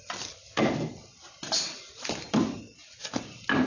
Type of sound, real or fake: real